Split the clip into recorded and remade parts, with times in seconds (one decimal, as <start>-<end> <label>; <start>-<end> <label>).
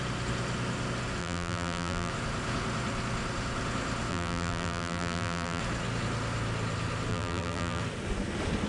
0.0-1.2 recorded; 1.2-2.1 remade; 2.1-4.1 recorded; 4.1-5.6 remade; 5.6-7.1 recorded; 7.1-7.8 remade; 7.8-8.7 recorded